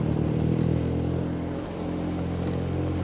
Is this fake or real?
real